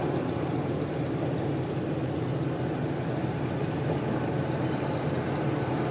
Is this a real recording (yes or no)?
yes